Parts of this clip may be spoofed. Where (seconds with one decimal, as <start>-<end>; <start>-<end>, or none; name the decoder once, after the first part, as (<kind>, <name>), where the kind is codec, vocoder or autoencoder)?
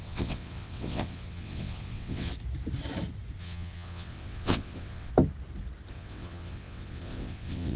0.0-2.3 (vocoder, WaveNeXt); 3.4-5.1; 5.9-7.8